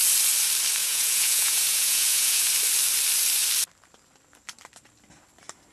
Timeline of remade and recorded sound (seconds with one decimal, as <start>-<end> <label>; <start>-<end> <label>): 0.0-0.8 recorded; 0.8-2.5 remade; 2.5-5.7 recorded

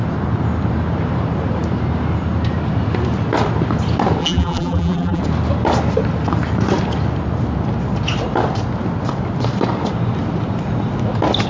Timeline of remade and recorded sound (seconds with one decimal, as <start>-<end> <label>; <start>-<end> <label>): 0.0-4.2 recorded; 4.2-5.2 remade; 5.2-11.5 recorded